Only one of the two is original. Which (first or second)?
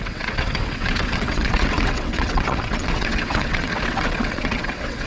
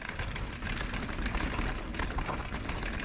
second